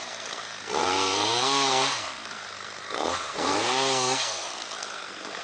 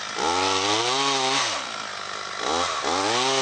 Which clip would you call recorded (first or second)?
second